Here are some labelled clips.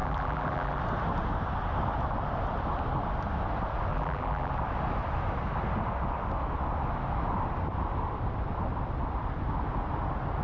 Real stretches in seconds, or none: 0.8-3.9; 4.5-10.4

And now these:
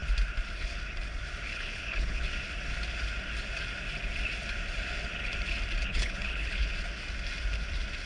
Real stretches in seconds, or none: 0.0-1.5; 2.2-5.9; 6.7-8.1

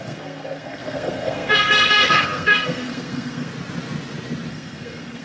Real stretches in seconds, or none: 3.5-4.5